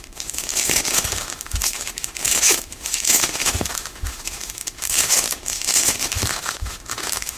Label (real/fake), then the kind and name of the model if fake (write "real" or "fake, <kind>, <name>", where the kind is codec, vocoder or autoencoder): fake, autoencoder, DAC-VAE